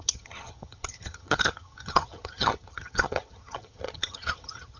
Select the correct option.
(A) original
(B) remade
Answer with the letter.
B